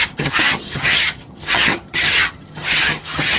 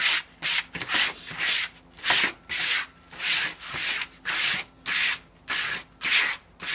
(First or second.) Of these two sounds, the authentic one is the second